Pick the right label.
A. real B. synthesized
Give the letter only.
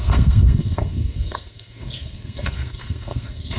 B